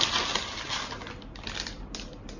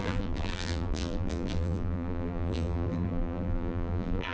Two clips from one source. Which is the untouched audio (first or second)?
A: first